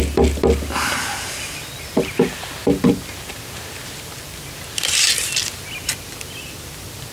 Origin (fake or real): real